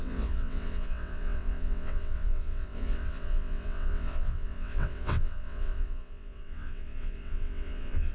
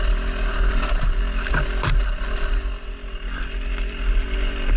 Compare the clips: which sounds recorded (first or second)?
second